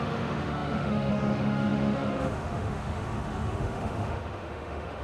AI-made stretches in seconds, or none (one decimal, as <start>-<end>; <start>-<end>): 0.0-5.0